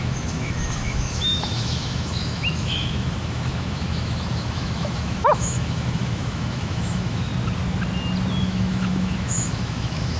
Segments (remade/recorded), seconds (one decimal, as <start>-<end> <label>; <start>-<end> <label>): 0.0-7.3 remade; 7.3-8.4 recorded; 8.4-10.2 remade